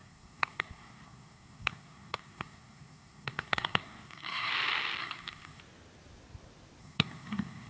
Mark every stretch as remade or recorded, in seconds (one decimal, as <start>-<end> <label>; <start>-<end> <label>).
0.0-4.5 remade; 4.5-5.0 recorded; 5.0-5.6 remade; 5.6-6.8 recorded; 6.8-7.7 remade